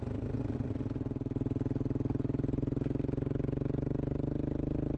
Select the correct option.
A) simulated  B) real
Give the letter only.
B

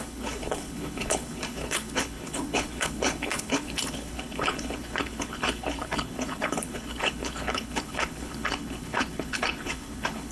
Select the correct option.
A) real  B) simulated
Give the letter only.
B